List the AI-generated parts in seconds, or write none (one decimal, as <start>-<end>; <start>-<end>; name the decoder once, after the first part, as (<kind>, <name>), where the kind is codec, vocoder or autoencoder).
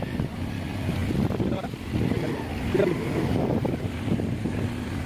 0.0-5.1 (vocoder, BigVGAN v2)